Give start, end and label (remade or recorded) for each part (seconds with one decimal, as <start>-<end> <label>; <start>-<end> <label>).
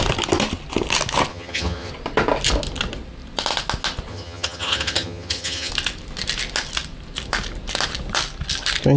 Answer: 0.0-1.3 recorded; 1.3-1.9 remade; 1.9-4.1 recorded; 4.1-5.7 remade; 5.7-9.0 recorded